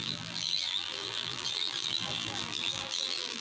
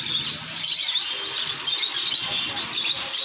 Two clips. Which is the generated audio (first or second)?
first